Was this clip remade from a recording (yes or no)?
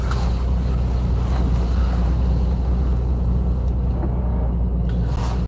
no